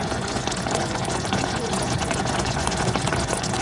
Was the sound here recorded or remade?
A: remade